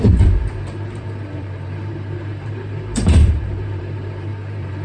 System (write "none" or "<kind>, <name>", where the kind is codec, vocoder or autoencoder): vocoder, BigVGAN v2